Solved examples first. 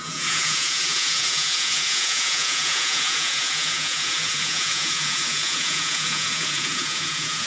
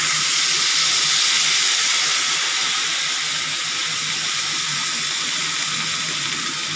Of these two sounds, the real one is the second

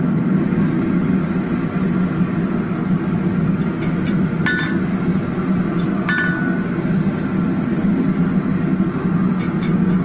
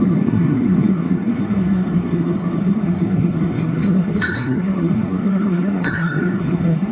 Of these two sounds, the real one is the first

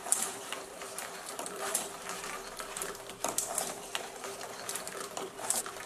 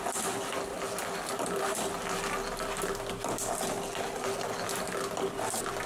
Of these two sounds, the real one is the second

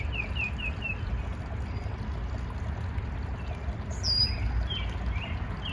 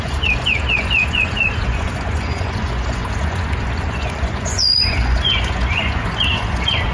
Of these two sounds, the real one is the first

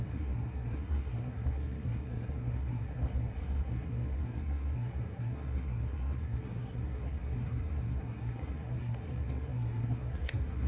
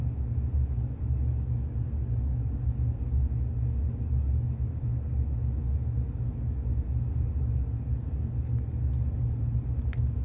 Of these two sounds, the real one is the second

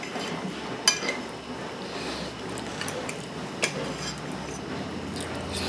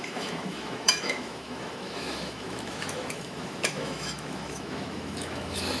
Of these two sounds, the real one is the first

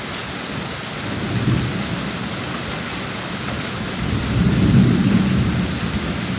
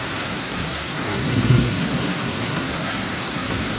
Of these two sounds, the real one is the first